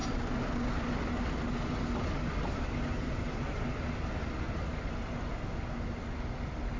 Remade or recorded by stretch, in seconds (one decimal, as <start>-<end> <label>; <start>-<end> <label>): 0.0-6.8 recorded